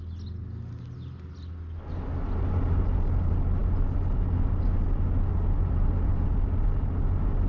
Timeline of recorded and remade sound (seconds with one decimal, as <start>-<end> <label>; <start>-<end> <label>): 0.0-7.5 recorded